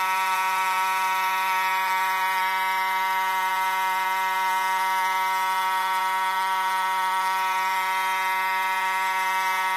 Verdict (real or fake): fake